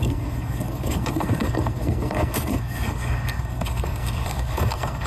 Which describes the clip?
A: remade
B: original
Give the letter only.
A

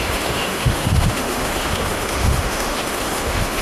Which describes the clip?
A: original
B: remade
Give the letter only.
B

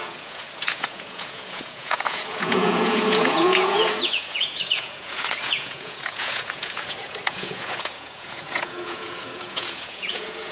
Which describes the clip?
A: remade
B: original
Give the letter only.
A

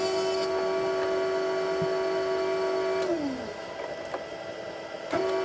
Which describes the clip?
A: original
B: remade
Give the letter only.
A